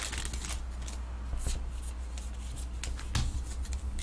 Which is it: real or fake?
real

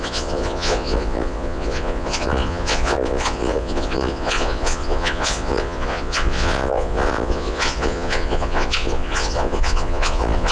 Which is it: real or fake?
fake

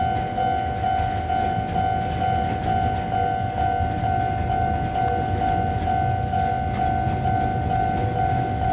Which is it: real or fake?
real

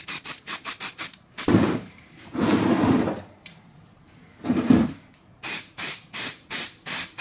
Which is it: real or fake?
fake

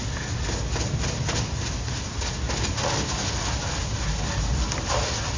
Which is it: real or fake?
real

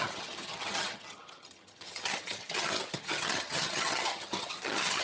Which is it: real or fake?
fake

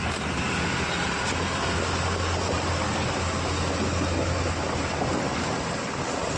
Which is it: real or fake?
real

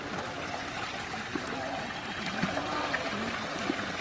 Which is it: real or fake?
real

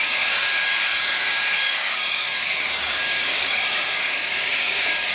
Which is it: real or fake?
fake